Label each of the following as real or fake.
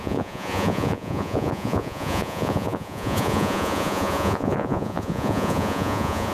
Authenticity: fake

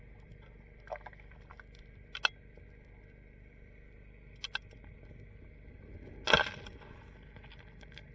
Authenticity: real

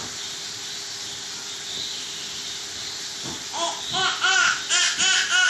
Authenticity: real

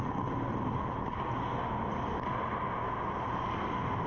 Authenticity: real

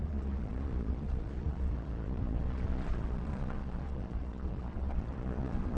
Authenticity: fake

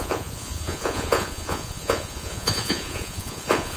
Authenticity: fake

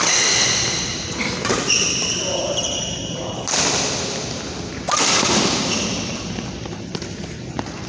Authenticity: real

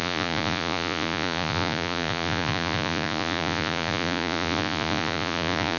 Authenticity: fake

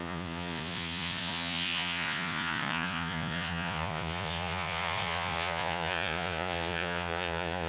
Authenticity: fake